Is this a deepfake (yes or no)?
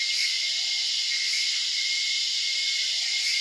no